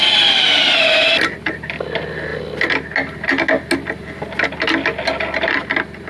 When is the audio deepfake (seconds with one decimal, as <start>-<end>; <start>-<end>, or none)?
none